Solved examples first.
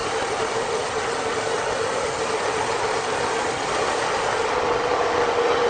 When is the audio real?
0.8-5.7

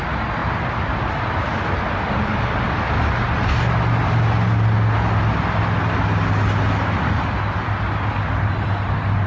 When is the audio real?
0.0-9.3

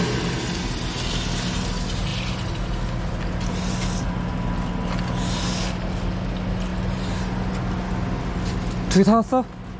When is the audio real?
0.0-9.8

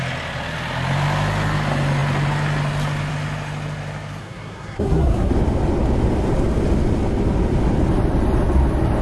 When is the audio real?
0.0-4.2; 5.3-9.0

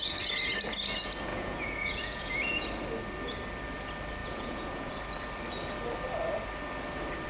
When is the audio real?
0.0-1.3; 2.7-4.2; 4.9-7.3